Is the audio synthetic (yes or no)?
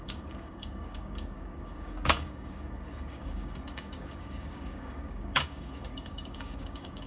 yes